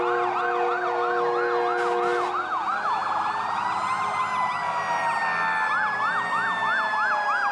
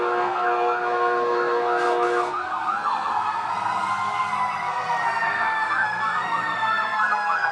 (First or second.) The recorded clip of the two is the first